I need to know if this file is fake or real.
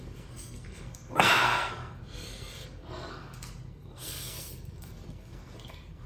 fake